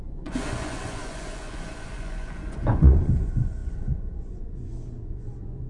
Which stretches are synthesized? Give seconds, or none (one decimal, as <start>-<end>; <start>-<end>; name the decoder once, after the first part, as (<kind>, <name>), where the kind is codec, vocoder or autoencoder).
0.0-5.7 (vocoder, Vocos)